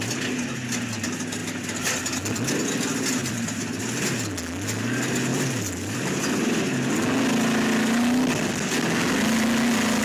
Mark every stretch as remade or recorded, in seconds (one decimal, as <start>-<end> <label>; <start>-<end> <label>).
0.0-3.2 recorded; 3.2-3.8 remade; 3.8-5.3 recorded; 5.3-6.6 remade; 6.6-10.0 recorded